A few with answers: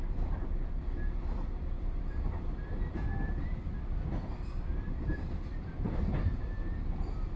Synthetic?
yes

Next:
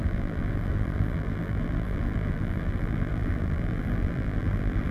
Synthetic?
yes